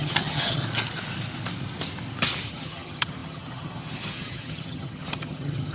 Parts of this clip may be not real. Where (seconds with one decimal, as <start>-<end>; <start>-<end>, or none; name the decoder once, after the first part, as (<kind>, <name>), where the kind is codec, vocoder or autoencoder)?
0.0-0.6 (vocoder, HiFi-GAN); 2.5-5.7